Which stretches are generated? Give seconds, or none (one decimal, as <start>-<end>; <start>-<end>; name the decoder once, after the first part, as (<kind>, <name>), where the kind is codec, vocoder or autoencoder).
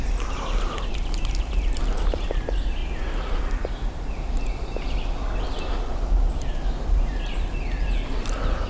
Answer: none